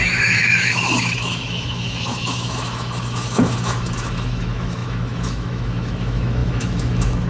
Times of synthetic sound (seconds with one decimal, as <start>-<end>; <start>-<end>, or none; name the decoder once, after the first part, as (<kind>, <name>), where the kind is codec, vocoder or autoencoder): 0.0-7.3 (autoencoder, DAC-VAE)